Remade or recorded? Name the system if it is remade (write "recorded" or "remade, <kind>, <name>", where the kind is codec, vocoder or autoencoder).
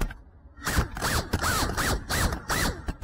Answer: remade, vocoder, BigVGAN v2